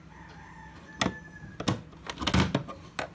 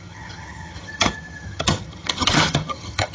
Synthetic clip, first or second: second